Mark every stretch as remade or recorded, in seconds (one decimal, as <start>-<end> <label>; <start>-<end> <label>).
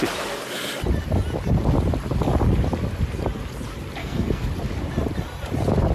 0.0-4.0 recorded; 4.0-4.5 remade; 4.5-5.9 recorded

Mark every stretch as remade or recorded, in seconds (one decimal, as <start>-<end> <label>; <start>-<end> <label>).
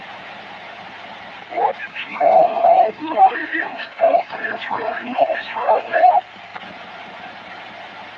0.0-1.9 recorded; 1.9-6.1 remade; 6.1-8.2 recorded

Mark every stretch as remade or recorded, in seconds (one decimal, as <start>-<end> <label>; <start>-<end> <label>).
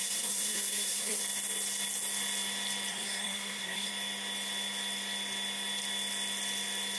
0.0-1.2 remade; 1.2-2.9 recorded; 2.9-3.9 remade; 3.9-7.0 recorded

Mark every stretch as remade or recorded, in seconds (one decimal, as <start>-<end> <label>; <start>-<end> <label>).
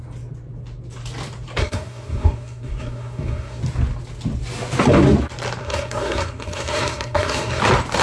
0.0-1.6 recorded; 1.6-3.6 remade; 3.6-5.6 recorded; 5.6-7.6 remade; 7.6-8.0 recorded